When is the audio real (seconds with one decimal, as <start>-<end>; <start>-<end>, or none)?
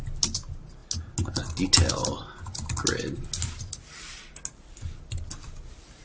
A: 0.0-6.0